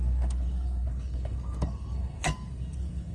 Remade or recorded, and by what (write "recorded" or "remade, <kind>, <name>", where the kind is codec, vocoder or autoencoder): remade, codec, SNAC